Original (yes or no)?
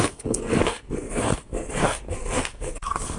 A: no